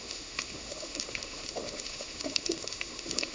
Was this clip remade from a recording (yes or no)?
yes